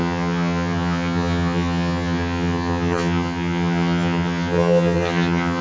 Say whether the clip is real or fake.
fake